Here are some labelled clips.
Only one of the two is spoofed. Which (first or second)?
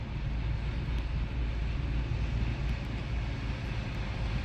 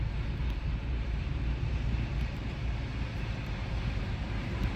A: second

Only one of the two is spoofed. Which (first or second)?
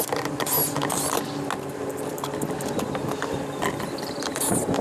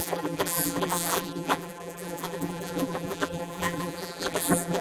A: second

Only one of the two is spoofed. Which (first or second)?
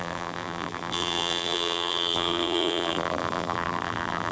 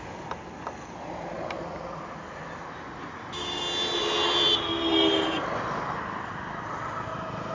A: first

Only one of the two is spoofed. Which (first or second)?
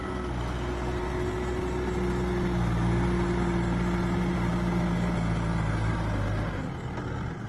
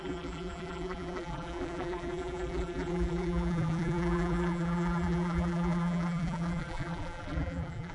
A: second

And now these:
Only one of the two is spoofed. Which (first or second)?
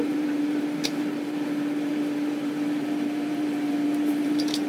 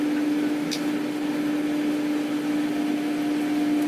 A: first